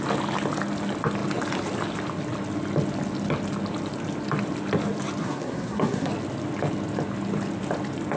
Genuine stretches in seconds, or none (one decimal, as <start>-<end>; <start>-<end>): 0.0-5.2; 6.1-8.2